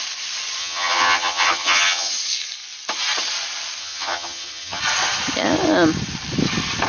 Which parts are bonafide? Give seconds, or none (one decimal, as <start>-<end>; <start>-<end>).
0.0-0.6; 2.1-3.8; 4.8-6.9